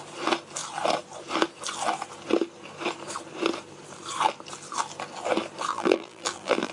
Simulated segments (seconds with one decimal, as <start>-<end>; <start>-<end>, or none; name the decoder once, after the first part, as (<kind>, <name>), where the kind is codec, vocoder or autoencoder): 5.7-6.7 (vocoder, BigVGAN v2)